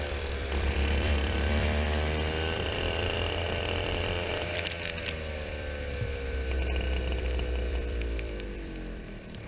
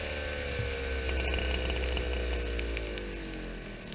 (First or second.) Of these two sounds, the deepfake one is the first